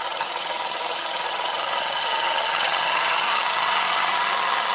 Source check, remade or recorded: remade